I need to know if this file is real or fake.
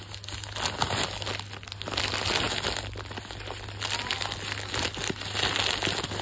real